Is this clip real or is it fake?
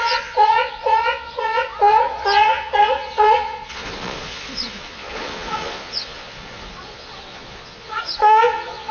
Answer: fake